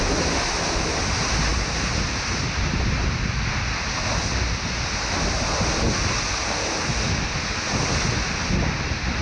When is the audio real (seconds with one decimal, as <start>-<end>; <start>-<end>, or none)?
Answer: 0.0-9.2